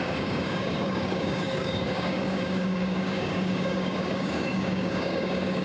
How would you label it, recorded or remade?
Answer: remade